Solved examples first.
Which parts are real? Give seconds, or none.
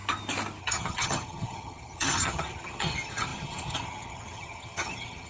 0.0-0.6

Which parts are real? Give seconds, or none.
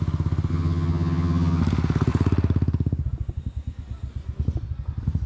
0.0-0.5; 1.6-5.3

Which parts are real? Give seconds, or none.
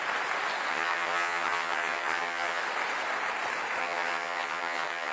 0.0-0.7; 2.6-3.8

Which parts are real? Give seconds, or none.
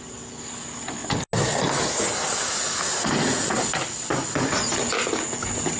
0.0-5.8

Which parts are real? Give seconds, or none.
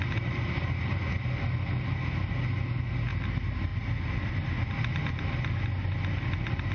0.0-6.7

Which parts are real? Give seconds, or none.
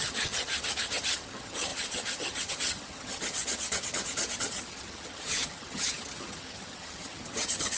none